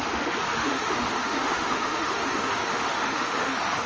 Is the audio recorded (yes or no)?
no